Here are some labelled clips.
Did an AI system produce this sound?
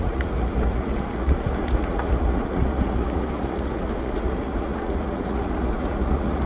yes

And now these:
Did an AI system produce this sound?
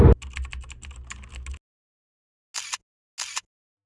no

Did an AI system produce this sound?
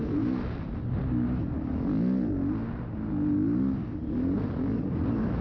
no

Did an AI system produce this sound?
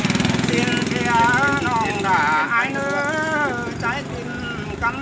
no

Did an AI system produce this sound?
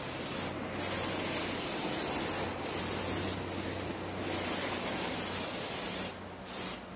no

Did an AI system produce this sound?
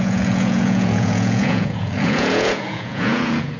yes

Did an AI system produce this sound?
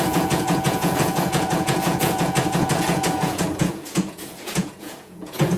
yes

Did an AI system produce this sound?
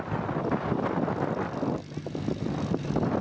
no